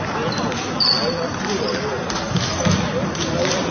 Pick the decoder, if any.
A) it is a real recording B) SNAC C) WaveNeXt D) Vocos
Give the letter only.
A